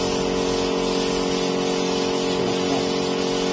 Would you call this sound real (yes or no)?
yes